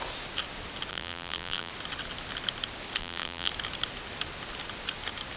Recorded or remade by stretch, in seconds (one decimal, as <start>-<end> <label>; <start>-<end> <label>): 0.0-0.9 recorded; 0.9-1.7 remade; 1.7-3.0 recorded; 3.0-3.5 remade; 3.5-5.4 recorded